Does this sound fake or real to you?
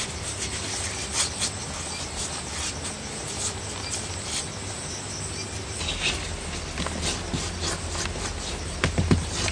real